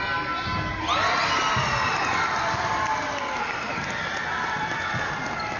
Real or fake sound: real